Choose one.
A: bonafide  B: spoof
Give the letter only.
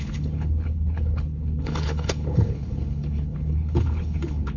B